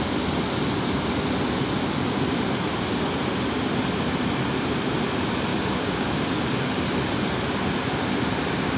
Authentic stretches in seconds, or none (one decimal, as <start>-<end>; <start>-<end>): 0.0-5.5; 6.3-8.8

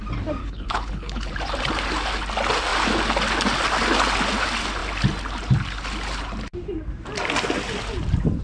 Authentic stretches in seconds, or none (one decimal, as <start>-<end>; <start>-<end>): 0.0-0.4; 1.3-8.4